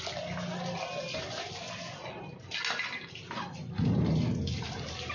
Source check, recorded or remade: recorded